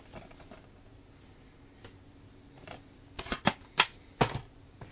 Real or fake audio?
real